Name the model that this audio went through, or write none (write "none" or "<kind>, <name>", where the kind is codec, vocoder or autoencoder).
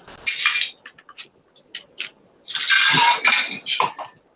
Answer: none